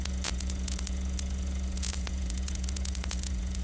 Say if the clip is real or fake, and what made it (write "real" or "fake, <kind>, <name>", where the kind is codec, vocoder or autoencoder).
fake, vocoder, Vocos